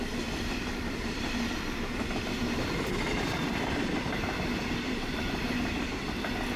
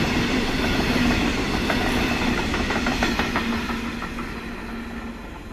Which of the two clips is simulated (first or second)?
first